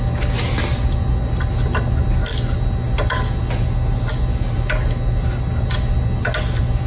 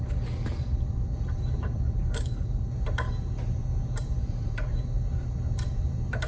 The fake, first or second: second